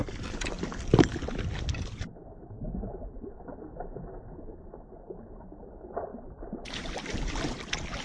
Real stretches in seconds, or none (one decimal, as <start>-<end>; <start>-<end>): 0.0-8.0